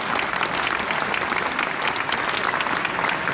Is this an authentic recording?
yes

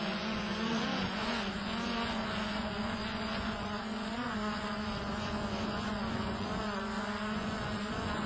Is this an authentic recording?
no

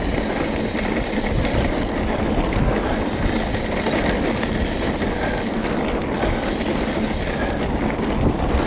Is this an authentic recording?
yes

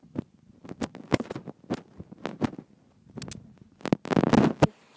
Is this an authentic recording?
yes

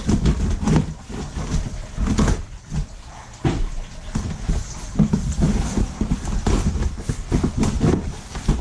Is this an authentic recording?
yes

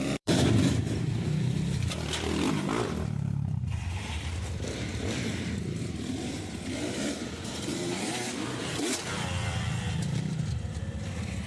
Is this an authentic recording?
no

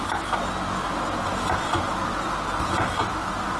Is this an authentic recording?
yes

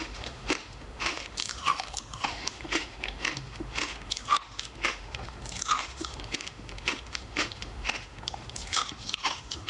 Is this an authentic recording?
no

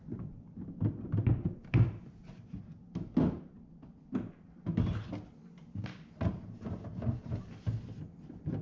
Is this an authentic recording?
yes